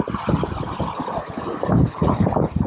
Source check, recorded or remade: recorded